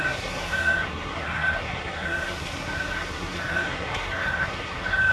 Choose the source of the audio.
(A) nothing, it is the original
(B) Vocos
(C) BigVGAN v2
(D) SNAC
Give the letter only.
D